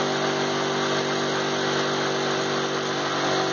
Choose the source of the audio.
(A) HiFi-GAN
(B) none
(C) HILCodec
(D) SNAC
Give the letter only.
B